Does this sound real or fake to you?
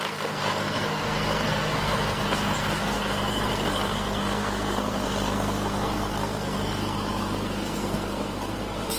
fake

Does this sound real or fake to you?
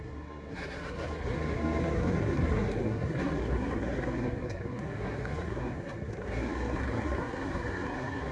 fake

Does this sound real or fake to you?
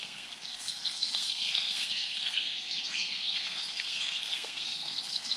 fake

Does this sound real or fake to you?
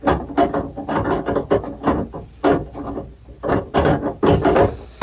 real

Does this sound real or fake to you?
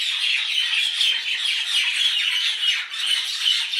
real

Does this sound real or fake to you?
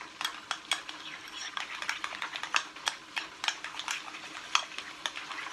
real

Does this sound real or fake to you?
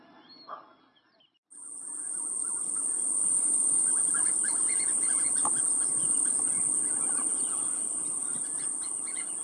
real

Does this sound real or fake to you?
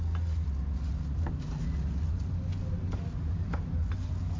real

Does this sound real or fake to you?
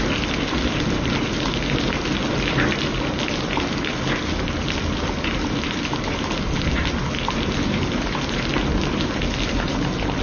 real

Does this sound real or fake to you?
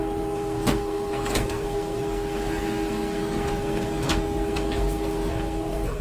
fake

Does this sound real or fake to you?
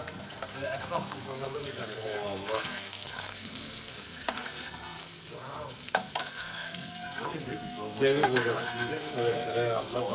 fake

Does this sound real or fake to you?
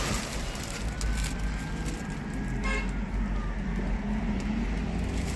real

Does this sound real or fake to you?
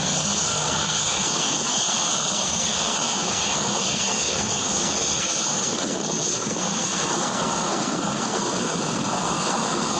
fake